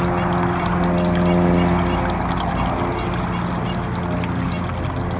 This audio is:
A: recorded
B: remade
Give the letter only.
A